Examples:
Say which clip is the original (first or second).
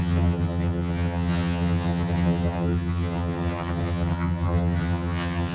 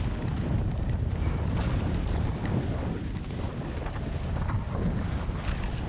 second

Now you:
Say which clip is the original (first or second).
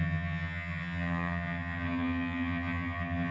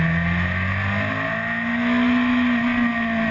second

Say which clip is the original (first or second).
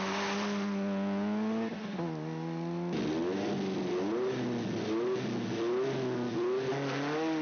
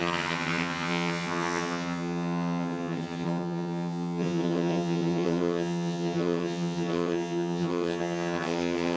first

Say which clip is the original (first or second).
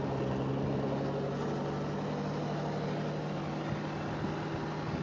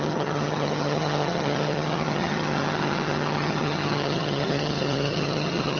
first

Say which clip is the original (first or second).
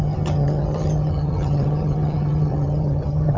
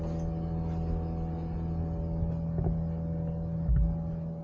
second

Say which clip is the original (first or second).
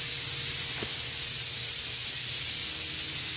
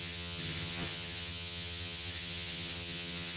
first